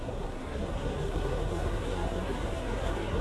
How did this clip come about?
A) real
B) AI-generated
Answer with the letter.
B